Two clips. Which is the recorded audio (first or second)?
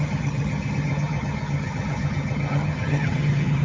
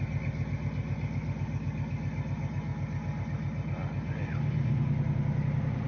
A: second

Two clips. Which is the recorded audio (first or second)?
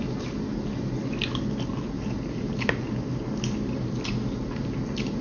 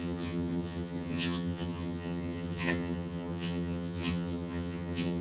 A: first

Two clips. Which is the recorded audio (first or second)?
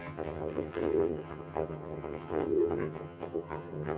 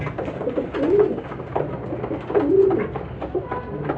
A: second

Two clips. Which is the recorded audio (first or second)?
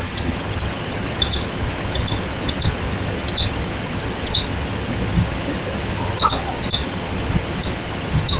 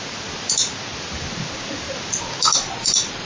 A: second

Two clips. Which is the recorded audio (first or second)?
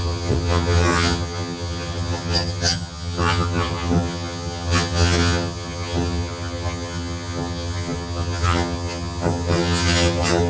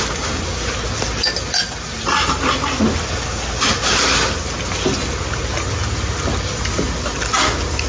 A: second